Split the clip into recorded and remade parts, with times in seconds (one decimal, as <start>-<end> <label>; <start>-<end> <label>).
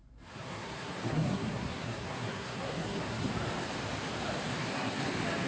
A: 0.0-3.3 remade; 3.3-4.6 recorded; 4.6-5.1 remade; 5.1-5.5 recorded